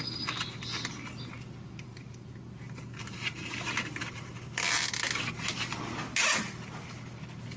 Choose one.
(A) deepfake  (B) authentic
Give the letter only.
B